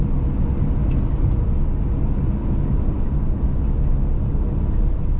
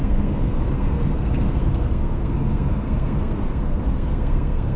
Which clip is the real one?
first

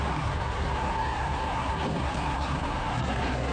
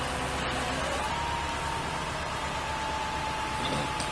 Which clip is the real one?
second